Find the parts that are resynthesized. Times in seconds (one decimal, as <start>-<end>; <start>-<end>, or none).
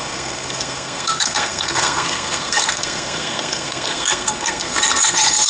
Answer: 0.0-5.5